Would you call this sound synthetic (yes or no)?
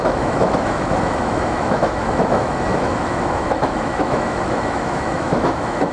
yes